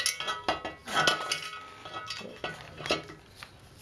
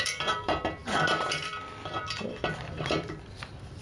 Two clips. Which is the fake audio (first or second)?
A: second